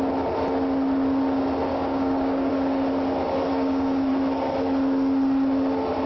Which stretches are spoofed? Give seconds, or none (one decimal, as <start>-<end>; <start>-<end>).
1.7-2.5; 3.5-4.1